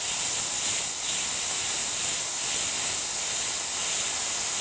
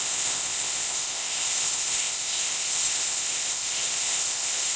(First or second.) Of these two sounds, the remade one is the second